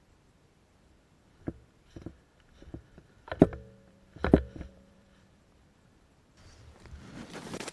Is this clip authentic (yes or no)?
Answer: no